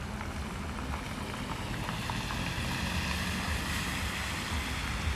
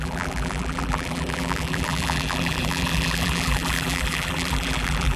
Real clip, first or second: first